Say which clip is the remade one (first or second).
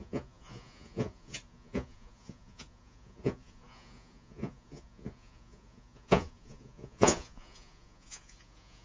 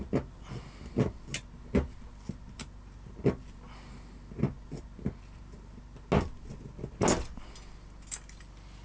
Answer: first